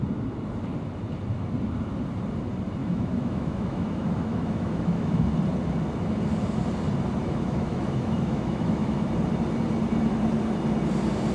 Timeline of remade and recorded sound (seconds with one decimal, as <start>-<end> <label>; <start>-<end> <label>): 0.0-2.8 recorded; 2.8-5.2 remade; 5.2-7.2 recorded; 7.2-9.1 remade; 9.1-11.3 recorded